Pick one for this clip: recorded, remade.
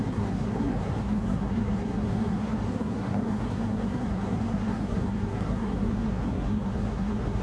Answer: remade